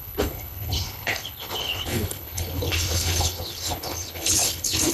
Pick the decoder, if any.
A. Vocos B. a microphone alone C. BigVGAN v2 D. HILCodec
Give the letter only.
D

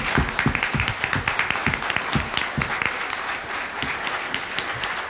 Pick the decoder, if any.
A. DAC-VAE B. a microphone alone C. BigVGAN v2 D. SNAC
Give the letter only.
B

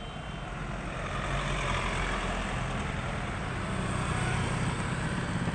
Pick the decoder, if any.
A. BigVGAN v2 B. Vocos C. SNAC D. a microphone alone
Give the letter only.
D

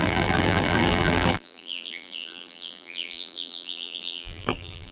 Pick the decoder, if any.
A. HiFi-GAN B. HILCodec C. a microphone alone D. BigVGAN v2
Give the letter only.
D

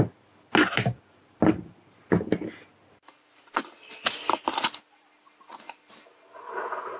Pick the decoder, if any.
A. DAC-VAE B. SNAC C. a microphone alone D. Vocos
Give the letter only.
C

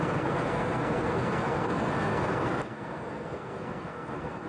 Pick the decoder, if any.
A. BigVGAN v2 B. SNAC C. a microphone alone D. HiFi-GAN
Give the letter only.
B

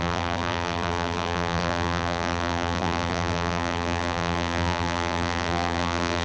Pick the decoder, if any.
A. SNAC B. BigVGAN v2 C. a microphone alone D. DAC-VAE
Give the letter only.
B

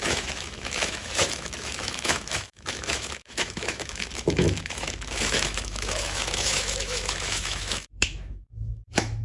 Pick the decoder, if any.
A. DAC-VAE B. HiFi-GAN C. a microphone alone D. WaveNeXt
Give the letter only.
A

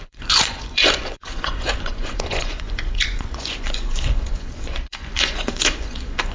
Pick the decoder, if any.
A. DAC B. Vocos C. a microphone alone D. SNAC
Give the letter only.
B